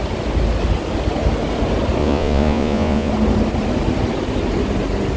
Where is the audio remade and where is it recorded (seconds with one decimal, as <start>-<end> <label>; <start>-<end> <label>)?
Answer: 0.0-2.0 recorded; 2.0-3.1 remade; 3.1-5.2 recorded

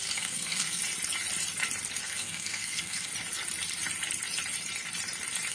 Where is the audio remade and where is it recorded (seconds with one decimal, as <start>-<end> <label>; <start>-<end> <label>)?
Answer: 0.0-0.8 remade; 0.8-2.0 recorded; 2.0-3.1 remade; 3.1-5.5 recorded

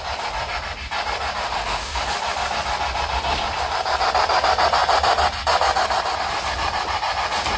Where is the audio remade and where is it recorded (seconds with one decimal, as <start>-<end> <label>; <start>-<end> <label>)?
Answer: 0.0-1.4 recorded; 1.4-2.0 remade; 2.0-7.6 recorded